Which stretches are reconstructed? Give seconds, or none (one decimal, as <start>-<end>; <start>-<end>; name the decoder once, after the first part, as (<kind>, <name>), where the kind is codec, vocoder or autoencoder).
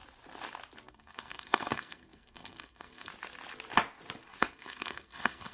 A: 0.9-3.1 (codec, SNAC); 4.4-5.5